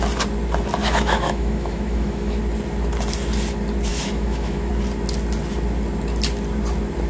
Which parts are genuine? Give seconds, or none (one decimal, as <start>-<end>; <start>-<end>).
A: 0.0-0.8; 2.4-3.9; 4.7-7.1